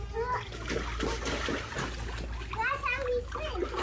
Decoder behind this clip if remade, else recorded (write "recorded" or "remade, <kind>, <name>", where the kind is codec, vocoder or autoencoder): recorded